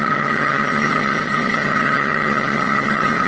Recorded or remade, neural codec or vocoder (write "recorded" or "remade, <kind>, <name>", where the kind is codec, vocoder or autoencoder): remade, vocoder, HiFi-GAN